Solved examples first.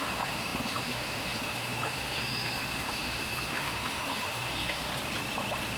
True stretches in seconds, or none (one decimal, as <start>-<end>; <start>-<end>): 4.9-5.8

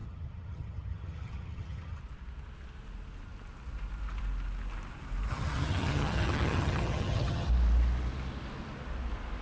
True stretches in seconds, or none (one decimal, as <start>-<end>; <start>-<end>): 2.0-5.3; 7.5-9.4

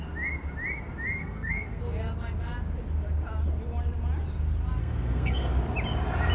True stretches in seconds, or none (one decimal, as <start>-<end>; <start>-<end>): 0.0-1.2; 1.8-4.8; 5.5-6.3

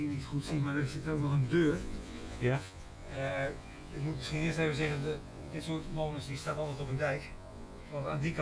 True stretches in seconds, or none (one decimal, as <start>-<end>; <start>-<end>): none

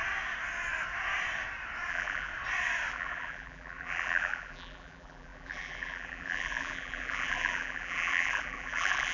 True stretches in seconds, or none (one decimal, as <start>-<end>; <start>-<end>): 0.0-1.9; 2.3-2.9

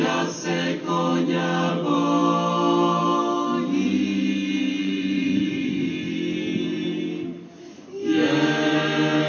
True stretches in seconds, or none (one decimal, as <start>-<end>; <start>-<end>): 0.0-4.8; 5.9-9.3